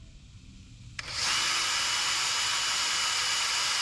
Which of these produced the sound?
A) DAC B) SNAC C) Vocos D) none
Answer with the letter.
D